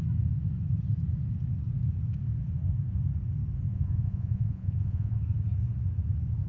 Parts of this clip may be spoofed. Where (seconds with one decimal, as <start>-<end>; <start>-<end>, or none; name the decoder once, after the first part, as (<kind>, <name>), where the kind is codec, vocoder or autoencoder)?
3.7-5.2 (vocoder, Vocos)